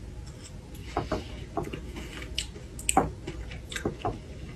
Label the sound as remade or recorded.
recorded